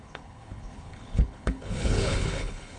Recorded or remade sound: remade